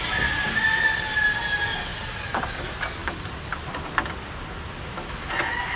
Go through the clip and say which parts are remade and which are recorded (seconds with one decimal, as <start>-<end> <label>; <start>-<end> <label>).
0.0-5.8 recorded